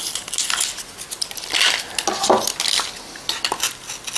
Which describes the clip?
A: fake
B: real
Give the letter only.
B